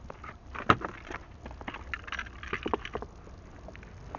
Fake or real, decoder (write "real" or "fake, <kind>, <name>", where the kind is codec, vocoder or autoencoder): real